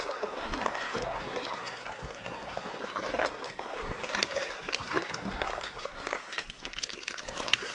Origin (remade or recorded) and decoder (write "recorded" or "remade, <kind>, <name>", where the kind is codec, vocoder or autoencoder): remade, codec, SNAC